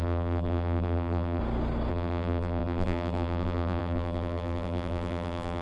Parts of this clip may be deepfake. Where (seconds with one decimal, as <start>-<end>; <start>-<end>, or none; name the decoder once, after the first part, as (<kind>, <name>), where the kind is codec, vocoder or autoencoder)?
0.0-1.4 (vocoder, BigVGAN v2); 1.9-5.6